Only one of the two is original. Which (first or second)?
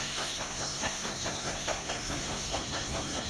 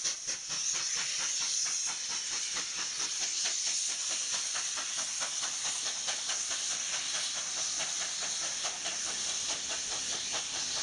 second